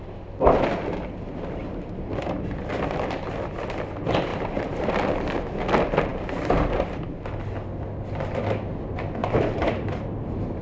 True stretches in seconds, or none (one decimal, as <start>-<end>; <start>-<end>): 0.0-4.3; 4.9-9.2